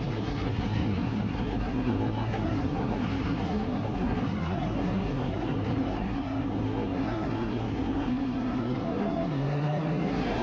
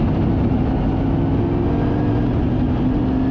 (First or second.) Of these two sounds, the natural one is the second